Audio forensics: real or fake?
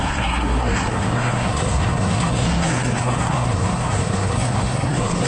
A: fake